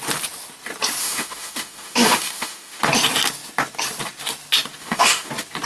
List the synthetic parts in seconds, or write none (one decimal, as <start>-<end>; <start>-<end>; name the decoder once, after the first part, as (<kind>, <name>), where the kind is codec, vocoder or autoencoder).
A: 1.0-2.8 (autoencoder, DAC-VAE); 4.8-5.3